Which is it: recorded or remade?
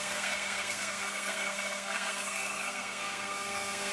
remade